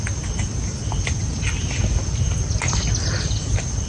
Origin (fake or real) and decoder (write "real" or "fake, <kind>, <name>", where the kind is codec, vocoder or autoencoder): real